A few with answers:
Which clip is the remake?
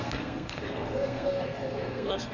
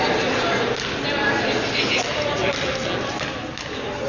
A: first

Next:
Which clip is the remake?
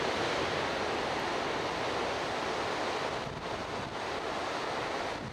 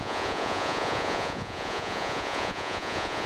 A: second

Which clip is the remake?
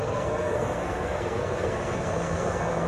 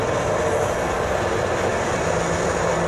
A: first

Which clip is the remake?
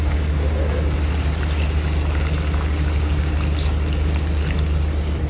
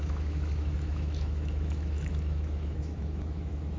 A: second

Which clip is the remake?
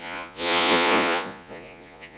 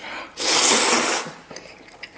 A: first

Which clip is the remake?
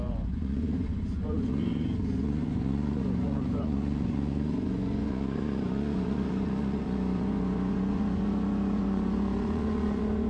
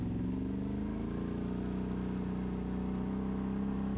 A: first